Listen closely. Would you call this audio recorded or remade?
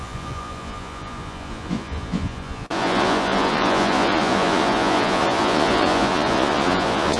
remade